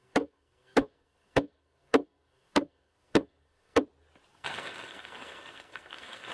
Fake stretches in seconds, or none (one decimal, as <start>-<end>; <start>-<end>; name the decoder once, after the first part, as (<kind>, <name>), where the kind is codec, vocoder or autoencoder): 0.0-3.8 (codec, SNAC); 4.3-6.3